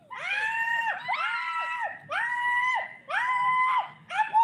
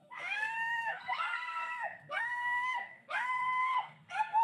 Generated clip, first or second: second